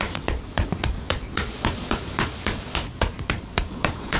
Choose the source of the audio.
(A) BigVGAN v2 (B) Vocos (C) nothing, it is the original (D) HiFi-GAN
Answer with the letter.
B